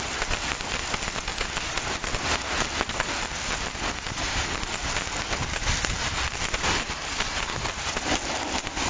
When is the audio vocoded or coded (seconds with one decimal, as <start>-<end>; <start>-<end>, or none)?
none